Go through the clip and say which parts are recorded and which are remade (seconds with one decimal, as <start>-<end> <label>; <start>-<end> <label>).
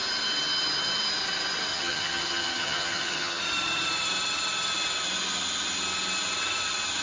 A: 0.0-1.7 recorded; 1.7-3.4 remade; 3.4-7.0 recorded